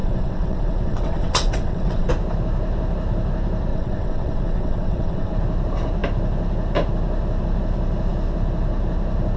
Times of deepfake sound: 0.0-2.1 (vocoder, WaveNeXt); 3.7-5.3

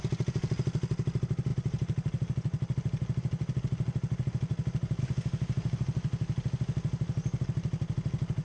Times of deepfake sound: none